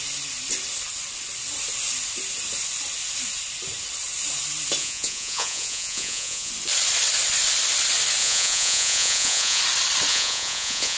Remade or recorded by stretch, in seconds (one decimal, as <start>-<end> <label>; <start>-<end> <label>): 0.0-4.8 recorded; 4.8-6.5 remade; 6.5-8.2 recorded; 8.2-9.6 remade; 9.6-10.1 recorded; 10.1-11.0 remade